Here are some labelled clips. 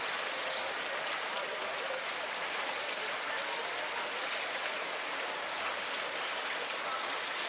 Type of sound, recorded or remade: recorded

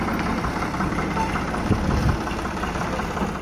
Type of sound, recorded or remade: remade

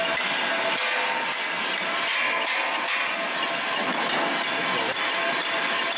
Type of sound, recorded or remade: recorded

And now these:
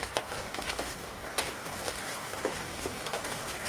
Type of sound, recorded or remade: remade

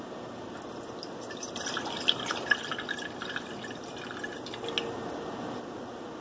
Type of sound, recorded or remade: recorded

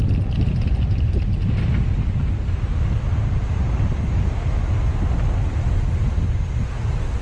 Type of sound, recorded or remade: recorded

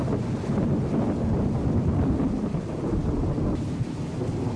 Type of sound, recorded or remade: recorded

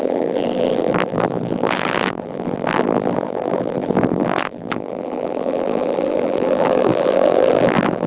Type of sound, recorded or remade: remade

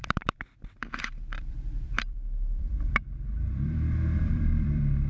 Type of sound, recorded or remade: remade